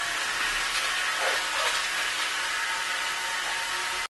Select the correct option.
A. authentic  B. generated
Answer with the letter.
A